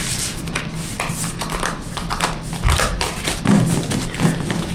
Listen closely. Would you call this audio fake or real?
real